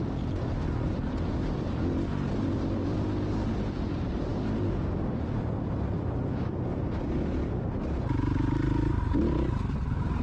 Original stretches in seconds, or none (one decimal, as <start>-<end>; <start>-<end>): 0.0-10.2